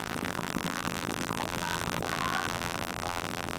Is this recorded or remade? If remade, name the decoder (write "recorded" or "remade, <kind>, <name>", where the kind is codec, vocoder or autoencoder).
remade, vocoder, BigVGAN v2